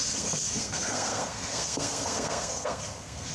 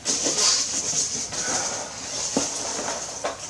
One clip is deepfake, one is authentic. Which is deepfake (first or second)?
first